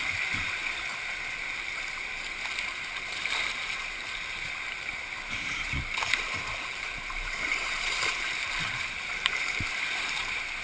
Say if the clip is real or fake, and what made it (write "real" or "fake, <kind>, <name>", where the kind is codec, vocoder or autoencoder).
fake, vocoder, BigVGAN v2